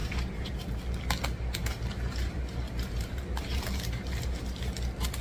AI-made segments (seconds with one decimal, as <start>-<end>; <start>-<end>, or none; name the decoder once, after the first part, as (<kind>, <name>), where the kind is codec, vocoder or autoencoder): 0.0-0.8 (vocoder, BigVGAN v2); 1.6-4.7